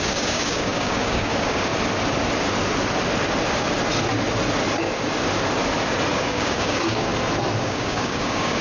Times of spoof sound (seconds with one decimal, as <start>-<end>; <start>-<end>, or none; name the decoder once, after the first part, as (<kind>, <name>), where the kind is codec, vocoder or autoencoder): 0.0-1.7 (codec, DAC); 6.1-7.1; 7.6-8.6